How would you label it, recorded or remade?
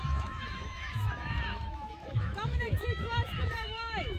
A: remade